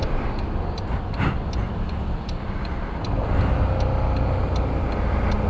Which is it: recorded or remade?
recorded